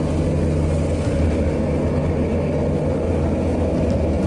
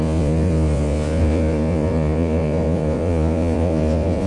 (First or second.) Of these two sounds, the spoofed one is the second